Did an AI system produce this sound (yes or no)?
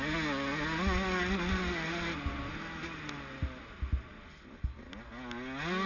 no